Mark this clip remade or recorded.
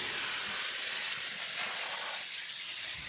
recorded